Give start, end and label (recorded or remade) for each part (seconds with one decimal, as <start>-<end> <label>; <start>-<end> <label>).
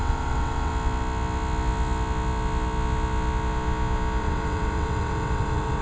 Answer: 0.0-0.7 remade; 0.7-4.2 recorded; 4.2-5.8 remade